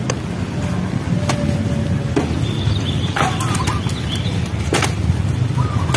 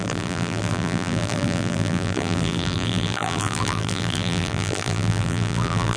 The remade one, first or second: second